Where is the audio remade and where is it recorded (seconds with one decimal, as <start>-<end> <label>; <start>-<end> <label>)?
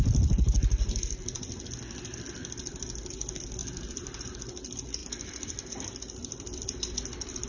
0.0-3.6 recorded; 3.6-4.2 remade; 4.2-5.0 recorded; 5.0-7.5 remade